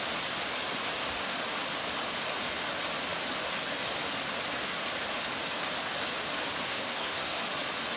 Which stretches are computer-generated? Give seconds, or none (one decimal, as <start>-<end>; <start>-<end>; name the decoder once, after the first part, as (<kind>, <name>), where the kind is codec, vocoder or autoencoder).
6.7-7.4 (codec, SNAC)

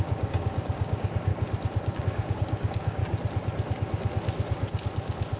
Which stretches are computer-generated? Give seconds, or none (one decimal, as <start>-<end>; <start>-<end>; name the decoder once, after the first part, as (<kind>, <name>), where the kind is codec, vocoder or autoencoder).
0.0-1.3 (codec, DAC); 2.0-3.0

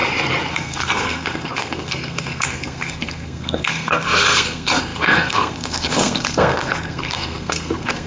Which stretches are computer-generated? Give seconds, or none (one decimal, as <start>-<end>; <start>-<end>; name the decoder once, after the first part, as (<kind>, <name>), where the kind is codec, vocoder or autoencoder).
0.5-8.1 (codec, SNAC)